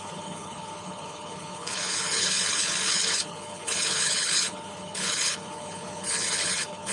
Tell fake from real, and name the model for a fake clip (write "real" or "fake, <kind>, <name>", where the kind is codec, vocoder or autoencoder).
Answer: fake, codec, HILCodec